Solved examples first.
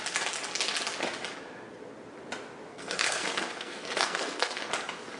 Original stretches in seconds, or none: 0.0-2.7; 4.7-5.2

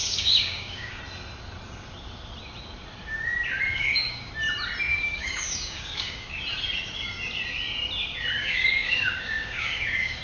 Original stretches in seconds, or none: 1.0-3.7; 4.3-4.9; 6.4-8.4